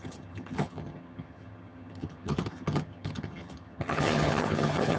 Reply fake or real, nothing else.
fake